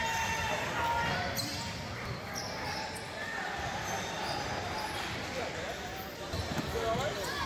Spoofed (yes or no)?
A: yes